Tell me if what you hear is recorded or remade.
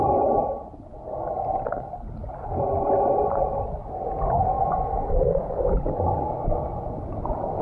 recorded